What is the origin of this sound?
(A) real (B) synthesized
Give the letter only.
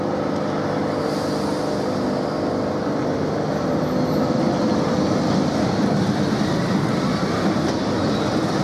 A